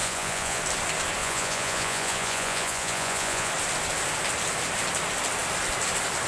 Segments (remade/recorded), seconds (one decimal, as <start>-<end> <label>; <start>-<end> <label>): 0.0-0.6 remade; 0.6-1.2 recorded; 1.2-3.5 remade; 3.5-6.3 recorded